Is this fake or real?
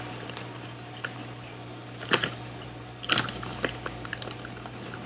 real